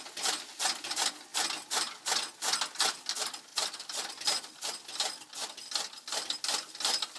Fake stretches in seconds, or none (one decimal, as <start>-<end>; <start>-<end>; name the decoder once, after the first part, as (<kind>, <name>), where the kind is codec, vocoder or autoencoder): none